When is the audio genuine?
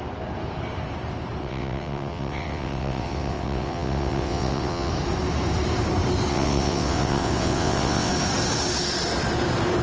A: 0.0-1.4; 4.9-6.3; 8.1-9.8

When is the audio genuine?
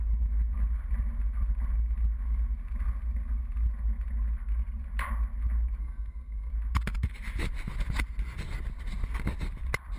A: 0.0-5.8; 6.5-10.0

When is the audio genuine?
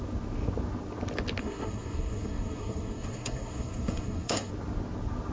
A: 0.0-1.4; 4.5-5.3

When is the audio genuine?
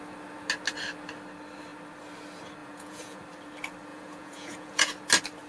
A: 0.0-2.6; 3.2-3.9; 4.9-5.5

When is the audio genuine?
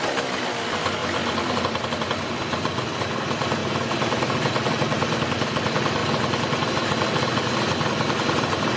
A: 0.0-8.8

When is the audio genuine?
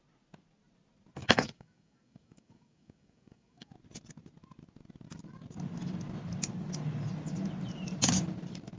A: 0.0-1.2; 3.7-8.8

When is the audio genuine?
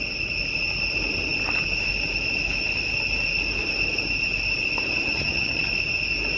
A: 0.0-5.1; 5.7-6.4